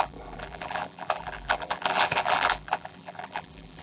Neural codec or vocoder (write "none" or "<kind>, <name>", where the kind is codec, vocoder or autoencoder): vocoder, BigVGAN v2